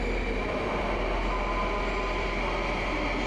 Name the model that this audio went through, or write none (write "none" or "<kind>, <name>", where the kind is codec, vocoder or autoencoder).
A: none